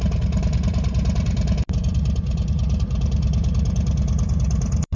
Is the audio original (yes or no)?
no